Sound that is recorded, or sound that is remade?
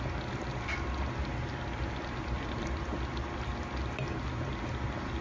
recorded